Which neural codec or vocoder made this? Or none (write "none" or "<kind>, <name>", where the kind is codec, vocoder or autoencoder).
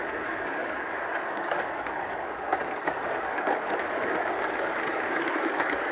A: codec, DAC